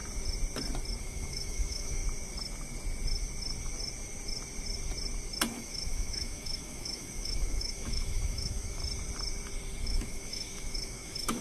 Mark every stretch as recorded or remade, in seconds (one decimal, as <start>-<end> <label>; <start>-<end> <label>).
0.0-1.0 recorded; 1.0-2.0 remade; 2.0-5.5 recorded; 5.5-8.8 remade; 8.8-9.8 recorded; 9.8-11.4 remade